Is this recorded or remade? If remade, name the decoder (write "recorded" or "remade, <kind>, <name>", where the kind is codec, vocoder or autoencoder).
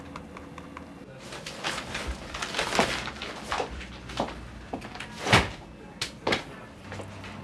recorded